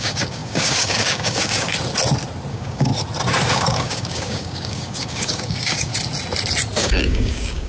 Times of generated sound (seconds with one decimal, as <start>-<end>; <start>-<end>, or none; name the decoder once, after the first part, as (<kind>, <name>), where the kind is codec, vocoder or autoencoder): 0.0-1.7 (codec, DAC); 2.5-2.9; 3.5-5.9; 6.8-7.7